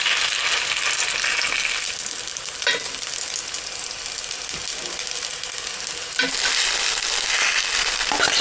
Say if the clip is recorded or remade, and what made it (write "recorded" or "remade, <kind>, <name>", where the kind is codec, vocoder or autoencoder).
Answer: recorded